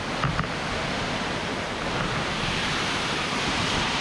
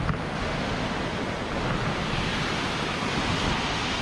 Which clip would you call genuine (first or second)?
second